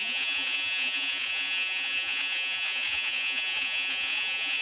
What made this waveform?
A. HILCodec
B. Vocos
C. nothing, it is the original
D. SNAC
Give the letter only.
B